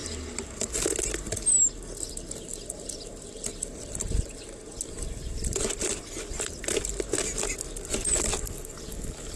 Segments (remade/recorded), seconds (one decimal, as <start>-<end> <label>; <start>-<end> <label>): 0.0-9.4 recorded